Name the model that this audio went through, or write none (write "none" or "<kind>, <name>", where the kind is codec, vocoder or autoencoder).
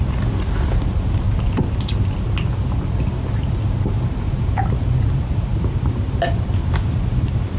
none